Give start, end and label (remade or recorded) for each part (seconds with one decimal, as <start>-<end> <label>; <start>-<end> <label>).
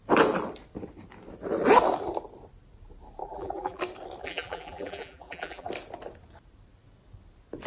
0.0-3.2 recorded; 3.2-3.8 remade; 3.8-4.2 recorded; 4.2-5.7 remade; 5.7-7.7 recorded